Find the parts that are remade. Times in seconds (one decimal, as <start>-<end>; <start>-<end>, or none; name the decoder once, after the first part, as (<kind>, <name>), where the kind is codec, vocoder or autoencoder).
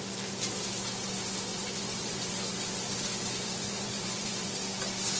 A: 1.5-4.5 (vocoder, Vocos)